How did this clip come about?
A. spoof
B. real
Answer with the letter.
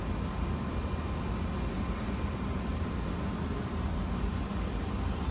B